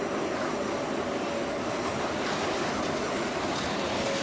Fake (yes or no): no